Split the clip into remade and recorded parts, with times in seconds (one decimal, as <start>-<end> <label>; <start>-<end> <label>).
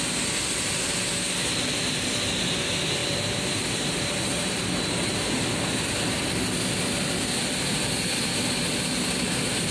0.0-9.7 recorded